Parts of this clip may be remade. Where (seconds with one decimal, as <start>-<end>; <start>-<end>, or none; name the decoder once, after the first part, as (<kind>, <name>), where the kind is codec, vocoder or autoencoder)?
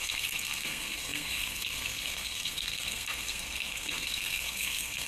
0.0-5.1 (codec, SNAC)